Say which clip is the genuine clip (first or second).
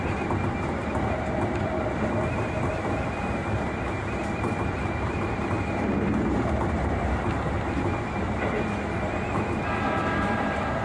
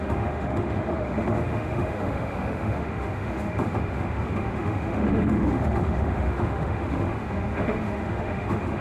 first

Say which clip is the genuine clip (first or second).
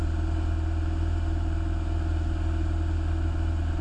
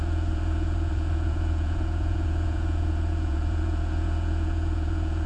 first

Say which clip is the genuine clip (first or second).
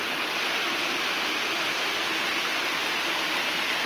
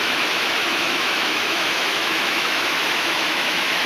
first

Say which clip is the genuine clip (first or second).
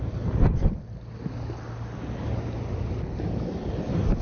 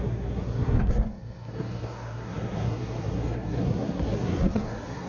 first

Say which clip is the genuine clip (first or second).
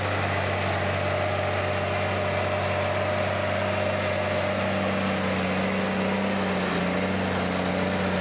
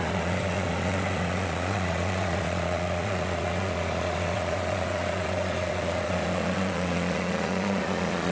first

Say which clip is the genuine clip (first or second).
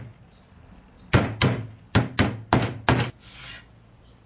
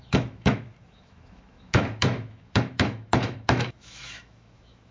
first